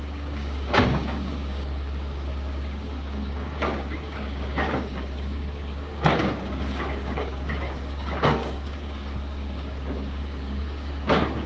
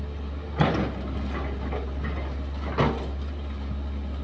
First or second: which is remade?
first